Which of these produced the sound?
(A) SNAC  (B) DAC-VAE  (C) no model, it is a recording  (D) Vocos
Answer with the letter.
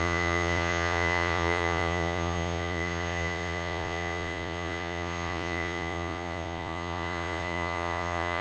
D